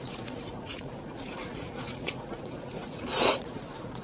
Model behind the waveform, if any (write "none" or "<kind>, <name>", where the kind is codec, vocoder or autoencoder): vocoder, Vocos